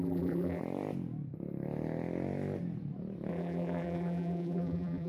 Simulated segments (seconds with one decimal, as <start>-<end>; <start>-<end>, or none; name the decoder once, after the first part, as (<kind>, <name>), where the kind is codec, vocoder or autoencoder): 0.0-0.6 (vocoder, BigVGAN v2); 3.3-5.1